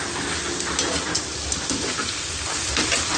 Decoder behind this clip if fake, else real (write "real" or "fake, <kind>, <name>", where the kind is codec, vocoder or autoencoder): real